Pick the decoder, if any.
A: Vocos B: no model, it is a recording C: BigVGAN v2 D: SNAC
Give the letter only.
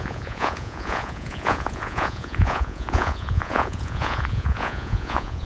A